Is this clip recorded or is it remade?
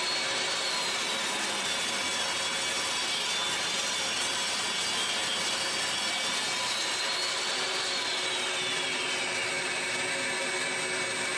recorded